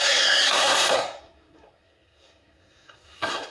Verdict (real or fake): fake